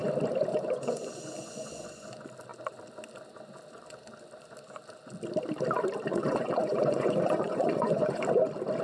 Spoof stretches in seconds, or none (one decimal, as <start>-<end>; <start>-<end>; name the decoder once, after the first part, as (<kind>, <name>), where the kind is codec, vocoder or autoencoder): 0.5-2.1 (vocoder, Vocos); 6.1-8.2